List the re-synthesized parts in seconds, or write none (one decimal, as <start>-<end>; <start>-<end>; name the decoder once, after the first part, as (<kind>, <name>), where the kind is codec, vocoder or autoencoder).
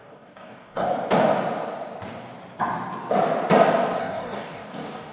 0.0-0.9 (codec, DAC); 4.0-5.1